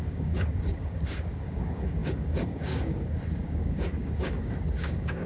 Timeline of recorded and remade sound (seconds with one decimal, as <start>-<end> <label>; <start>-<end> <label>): 0.0-5.3 remade